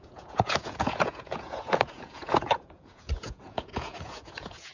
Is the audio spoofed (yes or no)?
yes